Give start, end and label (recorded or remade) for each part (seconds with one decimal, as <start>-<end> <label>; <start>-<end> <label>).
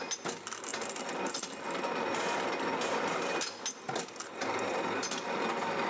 0.0-5.9 recorded